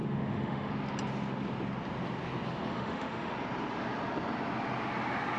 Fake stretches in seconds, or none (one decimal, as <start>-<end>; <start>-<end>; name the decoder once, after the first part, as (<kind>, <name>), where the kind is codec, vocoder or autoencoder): 0.0-0.7 (autoencoder, DAC-VAE); 2.7-3.3